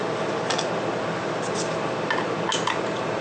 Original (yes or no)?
yes